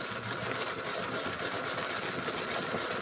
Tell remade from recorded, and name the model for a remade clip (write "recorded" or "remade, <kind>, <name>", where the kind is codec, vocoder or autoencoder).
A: recorded